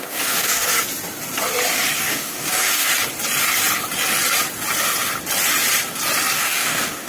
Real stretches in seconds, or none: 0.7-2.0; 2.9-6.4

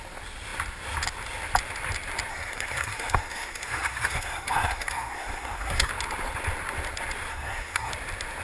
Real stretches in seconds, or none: 0.0-2.3; 5.9-7.3; 7.9-8.4